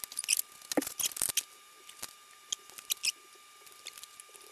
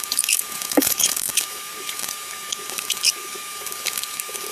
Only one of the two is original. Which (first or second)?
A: first